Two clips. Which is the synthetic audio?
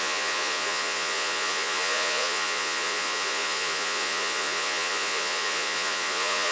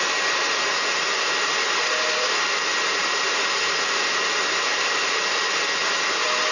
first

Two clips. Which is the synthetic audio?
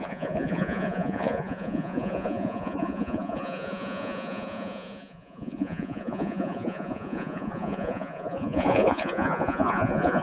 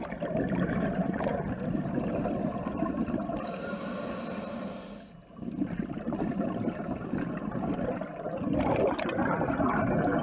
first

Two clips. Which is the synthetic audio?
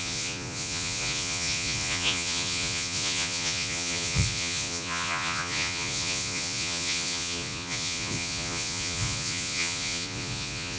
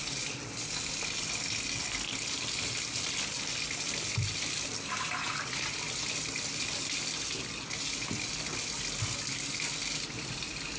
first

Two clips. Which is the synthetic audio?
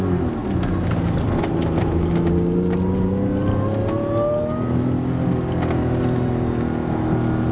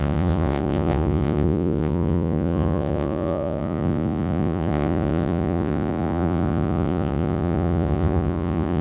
second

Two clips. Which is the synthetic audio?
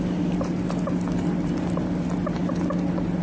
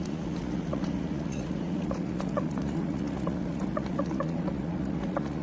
second